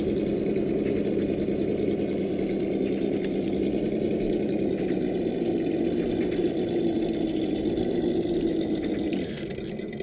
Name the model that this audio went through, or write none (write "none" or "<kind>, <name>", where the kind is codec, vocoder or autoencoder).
none